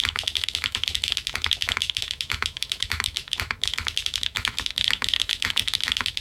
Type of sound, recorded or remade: remade